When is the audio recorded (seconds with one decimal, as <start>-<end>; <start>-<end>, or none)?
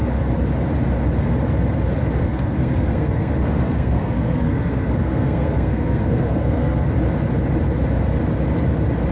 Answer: 0.0-2.2; 6.9-9.1